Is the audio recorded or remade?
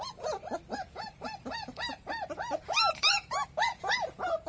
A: remade